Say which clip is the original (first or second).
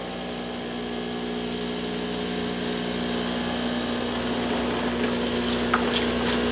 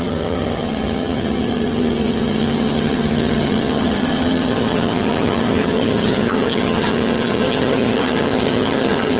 first